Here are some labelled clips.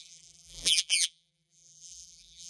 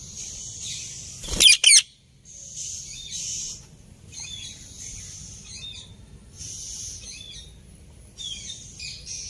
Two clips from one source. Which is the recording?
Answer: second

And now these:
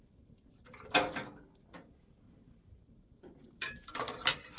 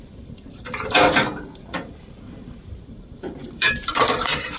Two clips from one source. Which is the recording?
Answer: first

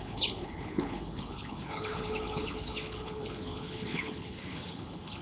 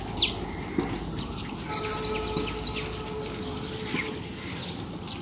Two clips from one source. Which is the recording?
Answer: second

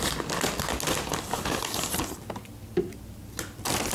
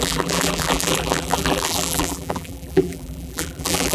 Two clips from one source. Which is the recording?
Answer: first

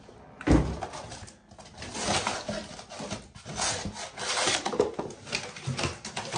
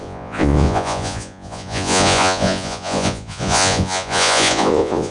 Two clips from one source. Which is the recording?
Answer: first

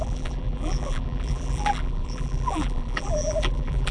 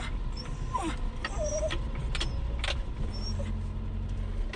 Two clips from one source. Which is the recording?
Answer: second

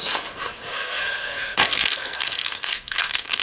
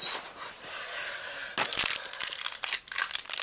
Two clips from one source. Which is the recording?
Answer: second